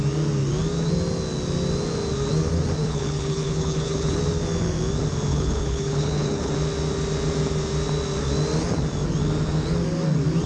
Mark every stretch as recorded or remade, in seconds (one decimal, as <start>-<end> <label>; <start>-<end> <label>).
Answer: 0.0-2.8 recorded; 2.8-4.2 remade; 4.2-5.3 recorded; 5.3-6.5 remade; 6.5-10.5 recorded